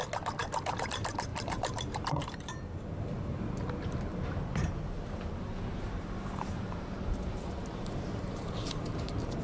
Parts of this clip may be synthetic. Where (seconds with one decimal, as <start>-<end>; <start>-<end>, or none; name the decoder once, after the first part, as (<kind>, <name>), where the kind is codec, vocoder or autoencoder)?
1.3-3.4 (vocoder, BigVGAN v2); 4.1-9.4